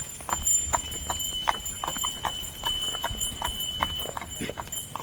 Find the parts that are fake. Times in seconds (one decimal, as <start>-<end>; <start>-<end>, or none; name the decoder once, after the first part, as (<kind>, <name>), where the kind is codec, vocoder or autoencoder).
1.9-3.7 (vocoder, Vocos)